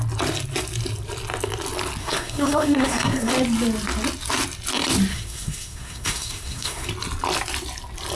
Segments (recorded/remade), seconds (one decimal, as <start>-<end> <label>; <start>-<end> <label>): 0.0-2.0 recorded; 2.0-3.3 remade; 3.3-5.1 recorded; 5.1-6.9 remade; 6.9-8.1 recorded